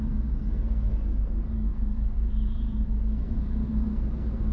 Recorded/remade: remade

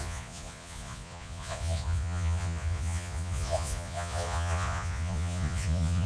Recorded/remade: remade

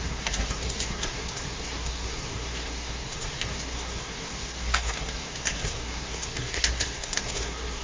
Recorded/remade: remade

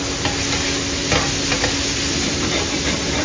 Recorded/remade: recorded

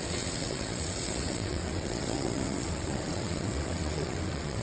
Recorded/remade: remade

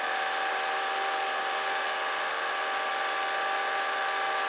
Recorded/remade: recorded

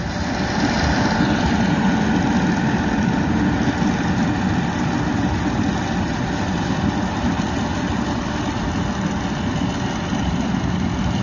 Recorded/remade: recorded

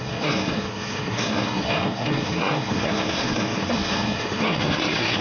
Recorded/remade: remade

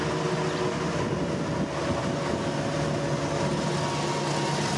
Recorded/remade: recorded